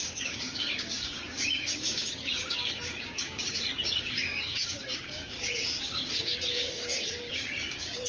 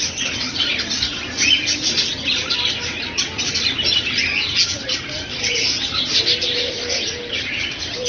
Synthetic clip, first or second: first